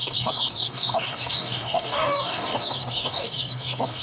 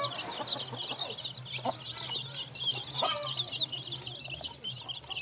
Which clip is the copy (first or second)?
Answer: first